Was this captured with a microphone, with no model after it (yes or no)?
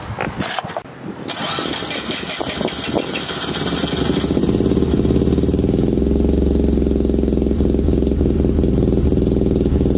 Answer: yes